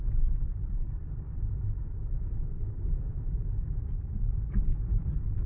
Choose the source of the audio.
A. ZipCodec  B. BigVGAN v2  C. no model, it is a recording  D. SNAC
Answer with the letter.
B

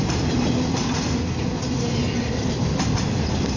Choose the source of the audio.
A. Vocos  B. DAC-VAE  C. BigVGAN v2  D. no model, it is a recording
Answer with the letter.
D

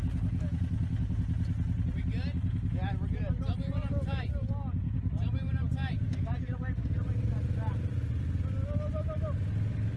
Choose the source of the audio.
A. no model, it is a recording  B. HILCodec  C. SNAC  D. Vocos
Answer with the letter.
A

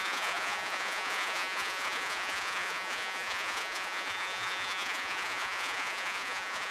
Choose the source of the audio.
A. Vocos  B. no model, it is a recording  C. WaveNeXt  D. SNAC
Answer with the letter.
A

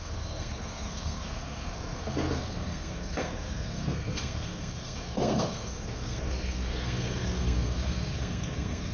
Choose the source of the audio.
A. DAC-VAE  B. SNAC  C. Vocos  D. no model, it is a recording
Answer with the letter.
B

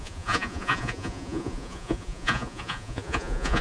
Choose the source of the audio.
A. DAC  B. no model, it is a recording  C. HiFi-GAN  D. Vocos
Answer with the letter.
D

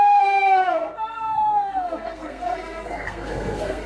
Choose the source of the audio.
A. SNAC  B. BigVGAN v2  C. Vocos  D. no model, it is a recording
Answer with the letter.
A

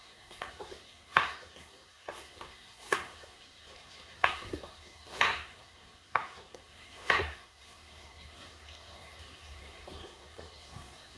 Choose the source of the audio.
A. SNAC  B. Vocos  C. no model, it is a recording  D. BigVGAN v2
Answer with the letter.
A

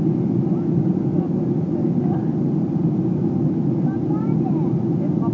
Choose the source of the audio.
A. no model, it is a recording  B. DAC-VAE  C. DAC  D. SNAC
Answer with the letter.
A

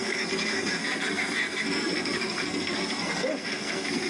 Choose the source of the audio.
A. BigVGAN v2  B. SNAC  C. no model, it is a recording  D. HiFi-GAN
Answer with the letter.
B